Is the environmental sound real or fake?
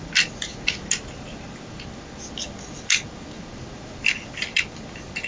real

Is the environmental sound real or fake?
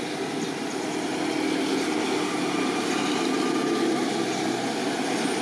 real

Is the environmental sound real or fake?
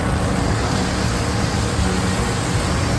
real